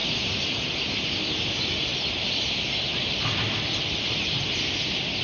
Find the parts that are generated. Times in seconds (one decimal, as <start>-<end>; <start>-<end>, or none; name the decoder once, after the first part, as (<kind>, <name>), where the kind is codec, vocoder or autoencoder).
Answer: none